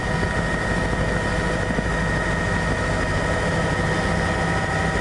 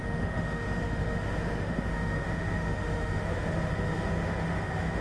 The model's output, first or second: second